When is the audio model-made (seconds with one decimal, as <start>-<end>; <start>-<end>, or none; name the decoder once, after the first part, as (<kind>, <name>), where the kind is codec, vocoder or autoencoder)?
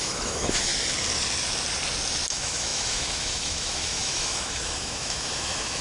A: 0.0-0.7 (autoencoder, DAC-VAE); 2.3-5.8